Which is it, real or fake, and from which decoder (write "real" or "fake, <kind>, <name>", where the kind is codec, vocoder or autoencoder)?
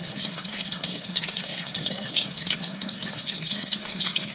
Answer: fake, codec, SNAC